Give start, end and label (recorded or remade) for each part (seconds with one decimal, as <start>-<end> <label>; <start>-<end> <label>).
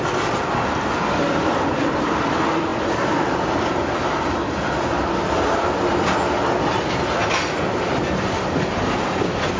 0.0-9.6 recorded